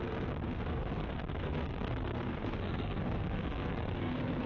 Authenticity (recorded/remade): remade